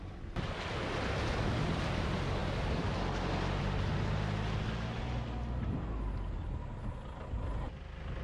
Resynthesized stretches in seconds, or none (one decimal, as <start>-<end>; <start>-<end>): none